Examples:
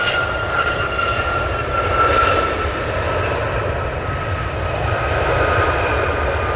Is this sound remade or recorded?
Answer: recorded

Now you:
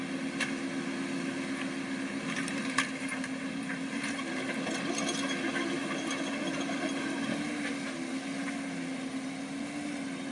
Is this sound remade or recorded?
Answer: recorded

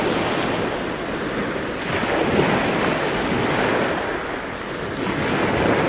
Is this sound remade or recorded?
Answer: recorded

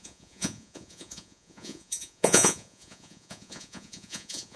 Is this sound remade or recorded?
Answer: remade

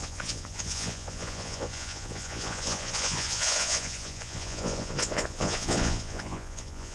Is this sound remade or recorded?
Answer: remade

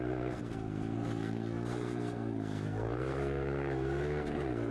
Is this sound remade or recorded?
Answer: remade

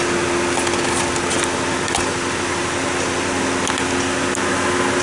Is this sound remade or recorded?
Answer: recorded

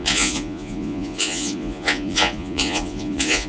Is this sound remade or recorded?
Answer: remade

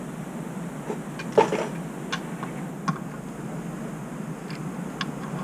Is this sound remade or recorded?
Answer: recorded